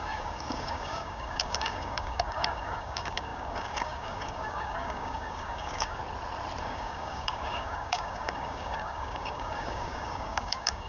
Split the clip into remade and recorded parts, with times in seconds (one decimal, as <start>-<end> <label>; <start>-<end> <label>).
0.0-6.0 remade; 6.0-6.6 recorded; 6.6-10.9 remade